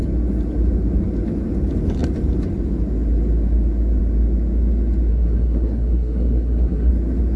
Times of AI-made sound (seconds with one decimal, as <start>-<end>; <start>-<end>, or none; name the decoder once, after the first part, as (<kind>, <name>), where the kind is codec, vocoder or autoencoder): 5.1-6.9 (codec, SNAC)